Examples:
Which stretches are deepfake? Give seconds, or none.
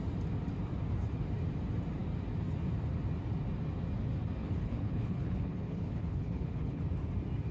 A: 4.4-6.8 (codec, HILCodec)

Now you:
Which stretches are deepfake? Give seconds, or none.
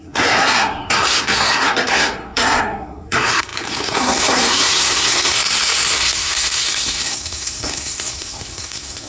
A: 0.0-9.1 (codec, SNAC)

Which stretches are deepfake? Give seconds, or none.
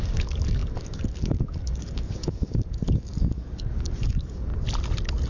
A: 0.0-4.5 (codec, DAC)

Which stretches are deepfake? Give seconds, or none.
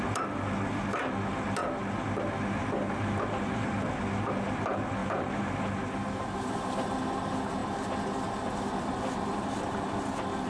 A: 2.6-3.9 (vocoder, BigVGAN v2); 5.0-6.9